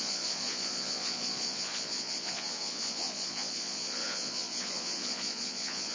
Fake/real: fake